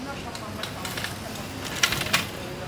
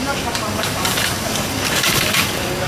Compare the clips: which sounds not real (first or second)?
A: second